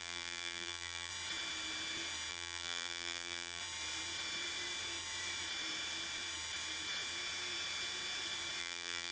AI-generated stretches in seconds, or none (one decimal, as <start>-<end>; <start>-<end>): 0.0-1.1; 2.3-3.6; 8.6-9.1